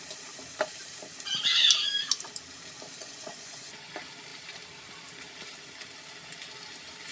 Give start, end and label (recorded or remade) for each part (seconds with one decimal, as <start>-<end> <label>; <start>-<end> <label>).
0.0-3.0 recorded; 3.0-3.9 remade; 3.9-7.1 recorded

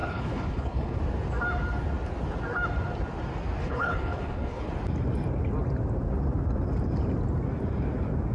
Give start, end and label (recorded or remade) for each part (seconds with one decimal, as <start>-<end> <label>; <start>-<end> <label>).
0.0-1.0 remade; 1.0-3.6 recorded; 3.6-4.7 remade; 4.7-8.3 recorded

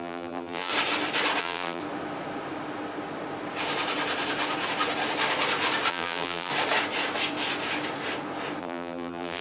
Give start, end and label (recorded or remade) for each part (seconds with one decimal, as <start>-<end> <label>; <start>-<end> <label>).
0.0-0.7 remade; 0.7-1.4 recorded; 1.4-1.8 remade; 1.8-5.9 recorded; 5.9-6.5 remade; 6.5-8.6 recorded; 8.6-9.4 remade

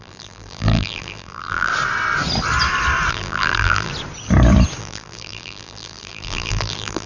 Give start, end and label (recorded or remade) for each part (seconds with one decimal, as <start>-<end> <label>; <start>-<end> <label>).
0.0-1.7 remade; 1.7-3.1 recorded; 3.1-3.9 remade; 3.9-4.8 recorded; 4.8-7.1 remade

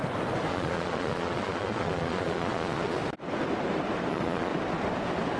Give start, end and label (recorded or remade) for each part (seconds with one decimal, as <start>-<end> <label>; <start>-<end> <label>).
0.0-0.5 recorded; 0.5-3.0 remade; 3.0-4.1 recorded; 4.1-4.5 remade; 4.5-5.4 recorded